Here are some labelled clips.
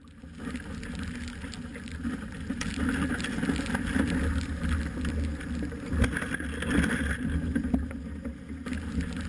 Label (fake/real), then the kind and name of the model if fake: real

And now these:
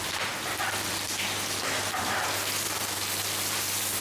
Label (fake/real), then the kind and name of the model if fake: real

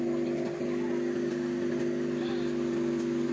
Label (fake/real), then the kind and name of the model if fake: real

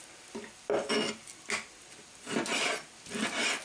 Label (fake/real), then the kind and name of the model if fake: real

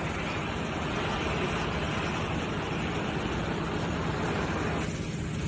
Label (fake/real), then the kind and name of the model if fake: real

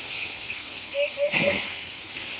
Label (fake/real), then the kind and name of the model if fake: fake, codec, SNAC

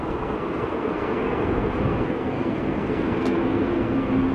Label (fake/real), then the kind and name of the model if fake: fake, codec, SNAC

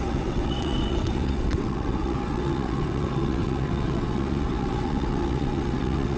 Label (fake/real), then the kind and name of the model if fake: fake, vocoder, WaveNeXt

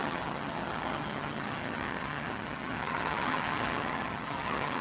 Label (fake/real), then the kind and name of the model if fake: fake, vocoder, HiFi-GAN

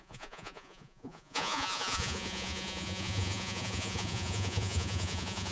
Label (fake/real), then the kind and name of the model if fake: fake, vocoder, Vocos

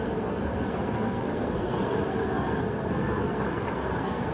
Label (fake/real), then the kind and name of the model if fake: fake, codec, SNAC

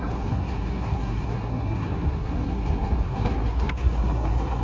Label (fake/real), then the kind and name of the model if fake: fake, codec, SNAC